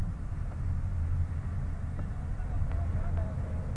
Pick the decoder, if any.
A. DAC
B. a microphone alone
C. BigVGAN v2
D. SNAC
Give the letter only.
B